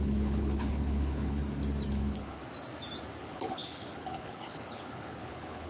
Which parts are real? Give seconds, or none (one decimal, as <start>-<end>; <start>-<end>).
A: 1.4-1.9; 2.4-3.2

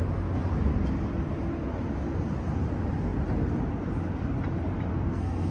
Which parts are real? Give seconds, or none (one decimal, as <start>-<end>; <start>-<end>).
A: 0.0-4.9

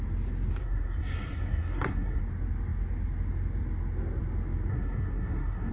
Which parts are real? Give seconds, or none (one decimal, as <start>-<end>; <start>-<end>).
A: 0.0-0.6; 2.2-4.7

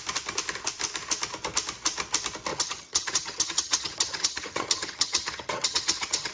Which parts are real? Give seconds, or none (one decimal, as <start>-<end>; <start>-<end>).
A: 0.0-2.5

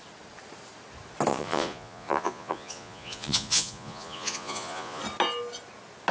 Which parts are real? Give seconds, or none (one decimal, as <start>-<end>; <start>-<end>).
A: 0.0-1.3; 5.0-6.1

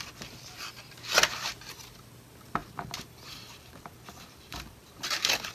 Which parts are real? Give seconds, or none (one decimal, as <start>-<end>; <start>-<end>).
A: 0.0-2.6